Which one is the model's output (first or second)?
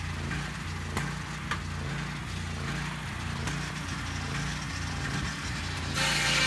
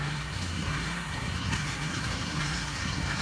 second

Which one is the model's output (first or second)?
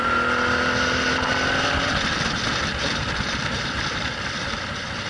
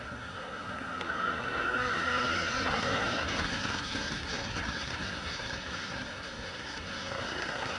second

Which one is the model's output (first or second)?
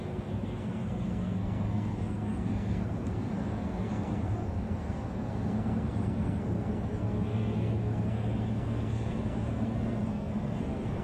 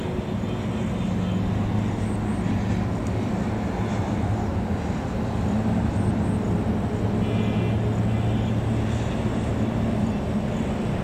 first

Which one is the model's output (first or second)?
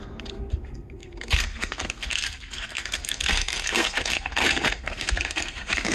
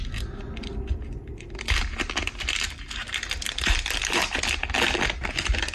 first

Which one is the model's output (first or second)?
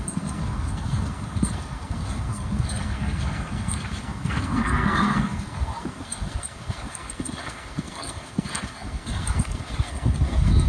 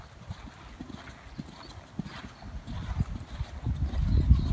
first